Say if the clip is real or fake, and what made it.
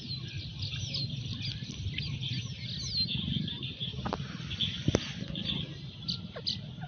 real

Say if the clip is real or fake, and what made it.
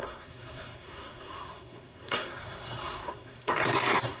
fake, codec, SNAC